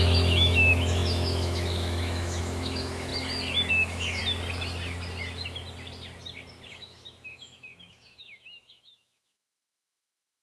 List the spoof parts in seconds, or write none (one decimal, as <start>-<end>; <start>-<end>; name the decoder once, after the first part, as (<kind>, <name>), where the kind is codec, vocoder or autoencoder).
0.0-3.1 (autoencoder, DAC-VAE); 3.7-4.2; 6.7-10.4